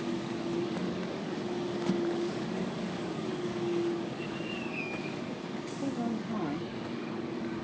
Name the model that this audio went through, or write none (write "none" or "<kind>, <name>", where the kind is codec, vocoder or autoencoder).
codec, DAC